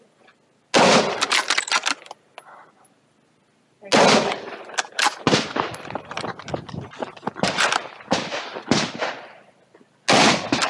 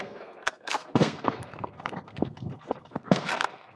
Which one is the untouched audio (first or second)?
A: first